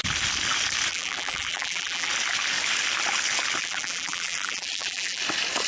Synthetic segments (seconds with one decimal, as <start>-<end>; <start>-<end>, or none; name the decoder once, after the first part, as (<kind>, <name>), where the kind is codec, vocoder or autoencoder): 0.9-2.1 (vocoder, BigVGAN v2); 3.6-5.2